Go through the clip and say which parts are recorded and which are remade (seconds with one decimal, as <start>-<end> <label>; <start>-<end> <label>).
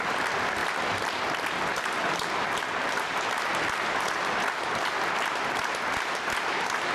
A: 0.0-6.9 recorded